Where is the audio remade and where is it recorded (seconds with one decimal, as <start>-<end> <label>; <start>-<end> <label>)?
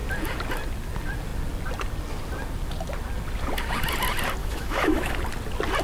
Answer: 0.0-4.4 recorded; 4.4-5.1 remade; 5.1-5.8 recorded